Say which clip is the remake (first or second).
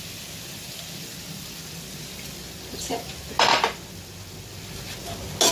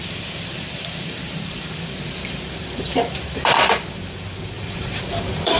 second